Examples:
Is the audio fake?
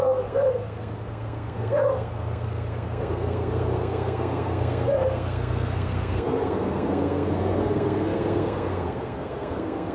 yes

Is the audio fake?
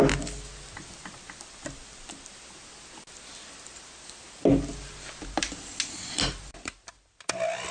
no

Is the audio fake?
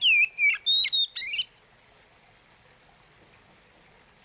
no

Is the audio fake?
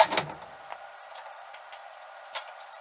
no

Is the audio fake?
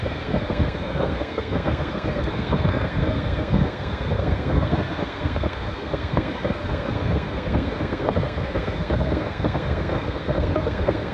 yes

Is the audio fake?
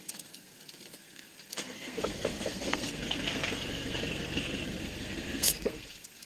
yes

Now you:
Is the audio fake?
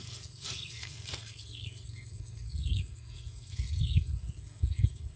yes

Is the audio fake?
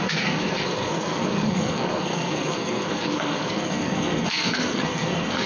yes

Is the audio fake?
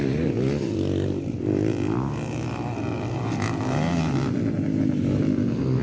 no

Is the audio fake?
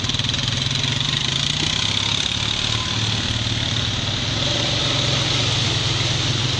no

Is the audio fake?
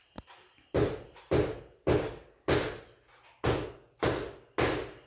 no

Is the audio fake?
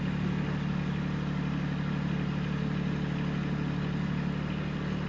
no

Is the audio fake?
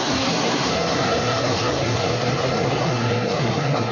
yes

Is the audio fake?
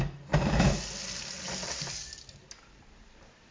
no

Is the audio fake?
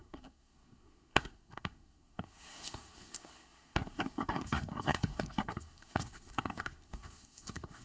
yes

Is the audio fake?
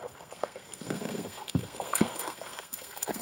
yes